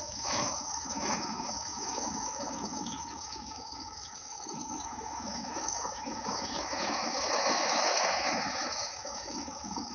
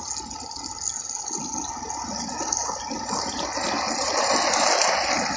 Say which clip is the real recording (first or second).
second